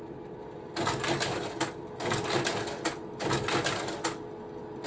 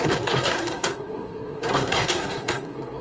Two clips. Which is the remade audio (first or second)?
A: second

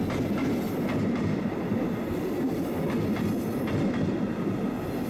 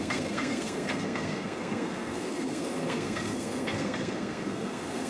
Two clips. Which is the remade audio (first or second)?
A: second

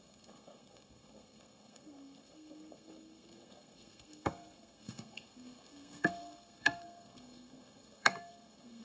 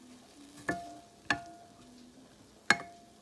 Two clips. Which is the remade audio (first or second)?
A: first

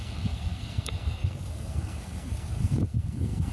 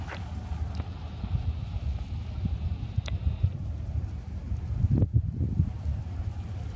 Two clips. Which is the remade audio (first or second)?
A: first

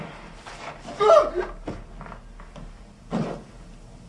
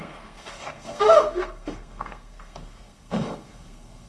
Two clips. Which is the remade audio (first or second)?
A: second